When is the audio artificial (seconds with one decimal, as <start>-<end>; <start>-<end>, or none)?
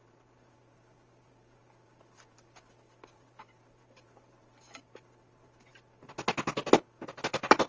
none